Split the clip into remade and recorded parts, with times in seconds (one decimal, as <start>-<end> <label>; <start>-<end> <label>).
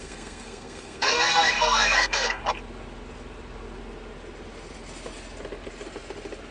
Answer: 0.0-2.4 remade; 2.4-6.5 recorded